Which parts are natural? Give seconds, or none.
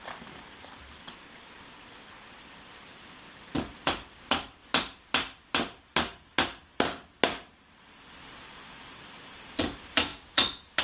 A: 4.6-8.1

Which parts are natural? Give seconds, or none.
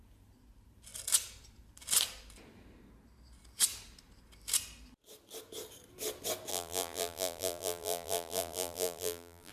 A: 0.0-6.5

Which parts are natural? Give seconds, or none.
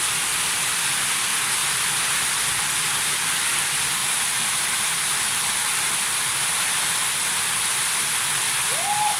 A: 0.0-1.6; 2.7-4.0; 6.9-9.2